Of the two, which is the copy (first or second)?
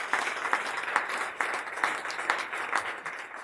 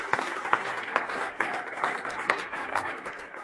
second